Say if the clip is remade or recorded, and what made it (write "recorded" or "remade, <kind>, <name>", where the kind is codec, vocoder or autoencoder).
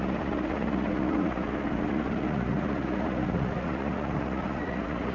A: remade, vocoder, Vocos